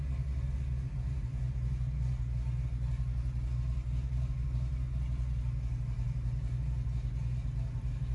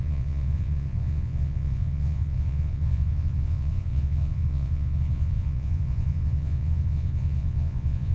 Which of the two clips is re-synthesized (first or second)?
second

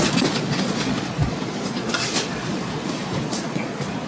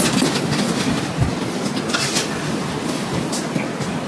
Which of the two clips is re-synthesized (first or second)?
first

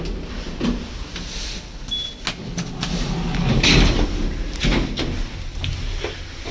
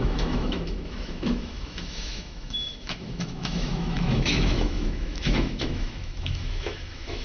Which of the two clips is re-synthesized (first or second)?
second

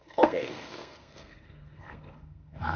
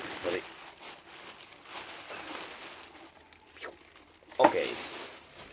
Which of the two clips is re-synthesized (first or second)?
first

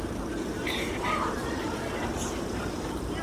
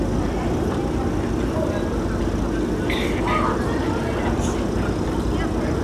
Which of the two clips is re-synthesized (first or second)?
first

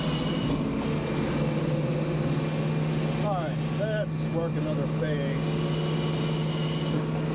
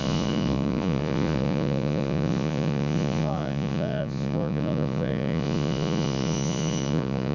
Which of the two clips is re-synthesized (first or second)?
second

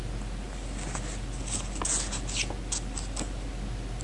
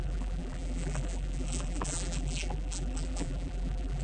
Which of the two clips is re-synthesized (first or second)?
second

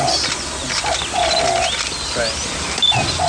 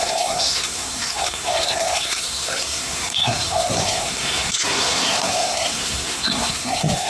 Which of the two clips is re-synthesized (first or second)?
second